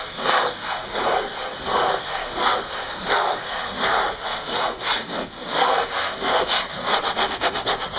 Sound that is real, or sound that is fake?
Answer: fake